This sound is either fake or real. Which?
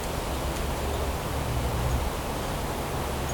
real